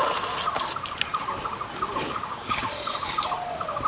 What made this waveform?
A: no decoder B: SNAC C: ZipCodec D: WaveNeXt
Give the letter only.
A